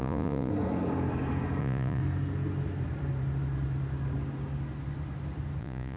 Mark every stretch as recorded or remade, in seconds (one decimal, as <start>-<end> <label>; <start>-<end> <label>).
0.0-0.5 remade; 0.5-1.6 recorded; 1.6-2.0 remade; 2.0-5.6 recorded; 5.6-6.0 remade